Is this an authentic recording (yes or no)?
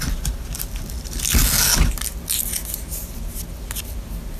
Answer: yes